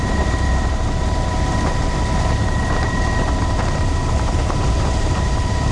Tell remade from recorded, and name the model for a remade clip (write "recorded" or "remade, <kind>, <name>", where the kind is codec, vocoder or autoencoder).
remade, vocoder, BigVGAN v2